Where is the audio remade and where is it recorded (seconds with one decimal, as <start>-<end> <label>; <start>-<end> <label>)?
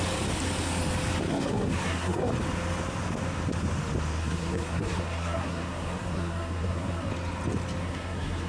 0.0-1.3 recorded; 1.3-2.3 remade; 2.3-4.2 recorded; 4.2-7.1 remade; 7.1-7.8 recorded; 7.8-8.5 remade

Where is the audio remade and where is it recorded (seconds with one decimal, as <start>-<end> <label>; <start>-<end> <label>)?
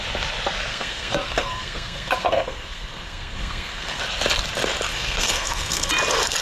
0.0-0.7 recorded; 0.7-4.0 remade; 4.0-4.9 recorded; 4.9-5.9 remade; 5.9-6.4 recorded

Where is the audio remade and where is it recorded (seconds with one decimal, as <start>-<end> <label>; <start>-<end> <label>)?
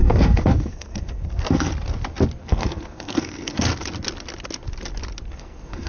0.0-1.7 remade; 1.7-2.4 recorded; 2.4-3.7 remade; 3.7-5.3 recorded; 5.3-5.9 remade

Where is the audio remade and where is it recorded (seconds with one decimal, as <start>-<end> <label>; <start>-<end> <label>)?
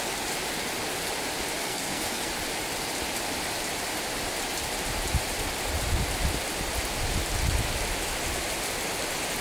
0.0-1.6 recorded; 1.6-2.3 remade; 2.3-9.4 recorded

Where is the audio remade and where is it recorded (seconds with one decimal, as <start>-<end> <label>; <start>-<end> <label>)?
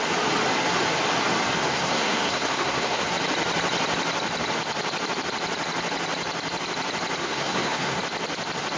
0.0-1.7 recorded; 1.7-3.1 remade; 3.1-7.2 recorded; 7.2-8.0 remade; 8.0-8.8 recorded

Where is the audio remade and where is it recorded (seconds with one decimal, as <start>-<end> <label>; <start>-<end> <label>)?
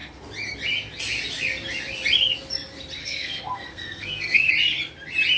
0.0-3.0 recorded; 3.0-4.5 remade; 4.5-5.4 recorded